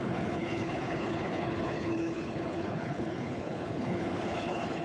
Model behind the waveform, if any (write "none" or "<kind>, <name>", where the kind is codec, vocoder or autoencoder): codec, HILCodec